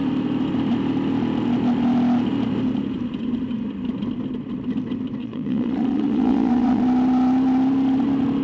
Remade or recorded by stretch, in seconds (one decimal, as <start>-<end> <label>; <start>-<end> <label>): 0.0-5.2 recorded; 5.2-6.8 remade; 6.8-8.4 recorded